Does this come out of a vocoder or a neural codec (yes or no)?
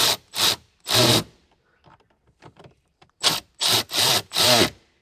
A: yes